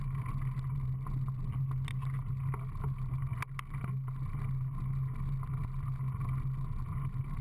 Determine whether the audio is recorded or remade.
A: recorded